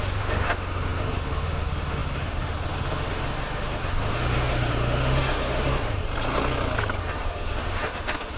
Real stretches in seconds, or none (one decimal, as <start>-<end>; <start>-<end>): 6.0-7.0